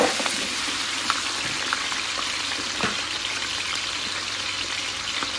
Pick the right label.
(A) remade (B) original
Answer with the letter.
B